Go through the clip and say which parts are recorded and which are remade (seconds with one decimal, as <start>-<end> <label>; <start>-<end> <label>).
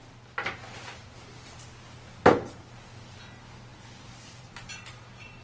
0.0-3.7 recorded; 3.7-4.5 remade; 4.5-5.4 recorded